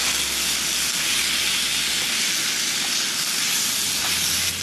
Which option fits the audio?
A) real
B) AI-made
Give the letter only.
A